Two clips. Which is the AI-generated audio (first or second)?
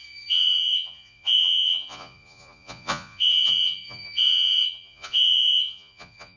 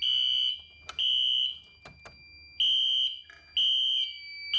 first